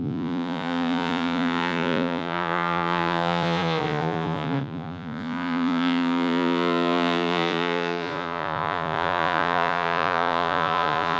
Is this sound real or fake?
fake